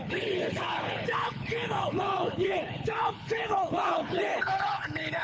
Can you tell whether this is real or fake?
fake